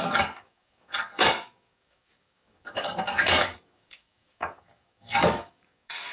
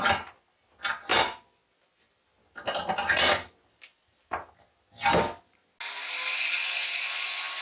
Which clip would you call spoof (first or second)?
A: first